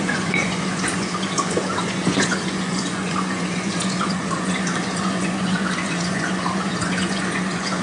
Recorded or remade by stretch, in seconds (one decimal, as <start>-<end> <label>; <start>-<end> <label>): 0.0-7.8 remade